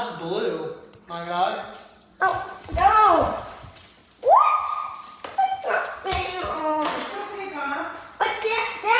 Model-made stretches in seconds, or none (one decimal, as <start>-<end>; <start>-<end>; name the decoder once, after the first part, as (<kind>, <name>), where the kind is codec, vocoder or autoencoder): 0.7-4.0 (vocoder, WaveNeXt); 5.7-9.0